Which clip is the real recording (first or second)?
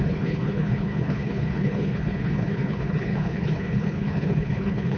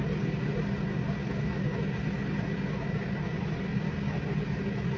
second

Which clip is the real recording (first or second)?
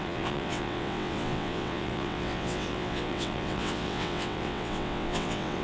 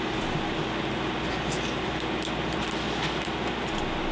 second